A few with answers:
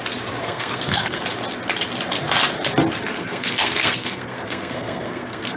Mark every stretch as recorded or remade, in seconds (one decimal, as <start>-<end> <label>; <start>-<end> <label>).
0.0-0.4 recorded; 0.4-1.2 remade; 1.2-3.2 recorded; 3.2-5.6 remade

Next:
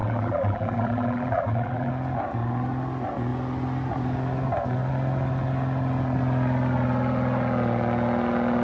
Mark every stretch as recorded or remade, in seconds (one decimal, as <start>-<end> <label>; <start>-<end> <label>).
0.0-1.9 remade; 1.9-8.6 recorded

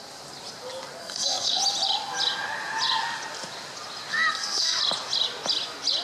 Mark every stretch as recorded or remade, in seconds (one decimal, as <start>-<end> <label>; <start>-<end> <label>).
0.0-1.0 recorded; 1.0-1.6 remade; 1.6-4.1 recorded; 4.1-4.8 remade; 4.8-6.0 recorded

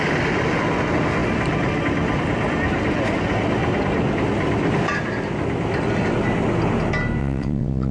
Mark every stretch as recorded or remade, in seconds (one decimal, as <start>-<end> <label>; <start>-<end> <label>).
0.0-7.2 recorded; 7.2-7.9 remade